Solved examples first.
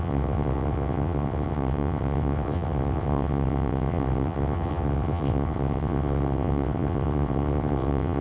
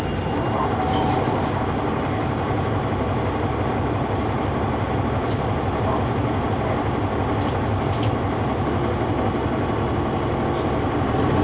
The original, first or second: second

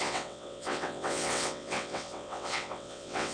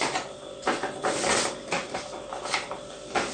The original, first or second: second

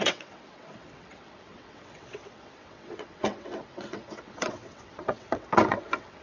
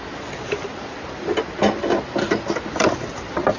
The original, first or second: second